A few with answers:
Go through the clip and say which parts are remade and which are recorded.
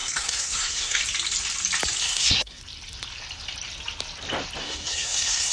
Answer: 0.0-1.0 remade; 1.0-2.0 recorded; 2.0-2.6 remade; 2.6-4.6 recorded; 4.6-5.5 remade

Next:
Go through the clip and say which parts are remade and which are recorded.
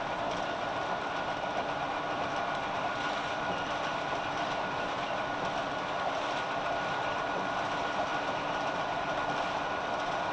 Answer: 0.0-10.3 remade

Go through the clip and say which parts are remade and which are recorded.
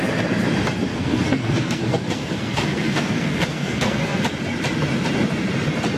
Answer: 0.0-0.9 recorded; 0.9-4.2 remade; 4.2-6.0 recorded